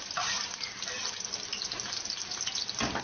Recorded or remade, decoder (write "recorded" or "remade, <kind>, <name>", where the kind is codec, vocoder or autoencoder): remade, vocoder, BigVGAN v2